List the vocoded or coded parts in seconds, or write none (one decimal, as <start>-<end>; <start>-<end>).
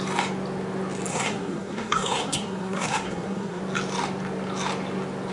1.1-3.6